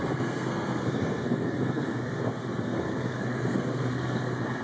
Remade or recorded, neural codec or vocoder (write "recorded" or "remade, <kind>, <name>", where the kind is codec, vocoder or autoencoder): remade, codec, SNAC